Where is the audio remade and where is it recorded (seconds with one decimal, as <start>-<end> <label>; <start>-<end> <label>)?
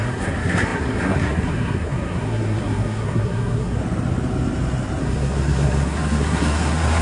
0.0-3.8 remade; 3.8-5.0 recorded; 5.0-7.0 remade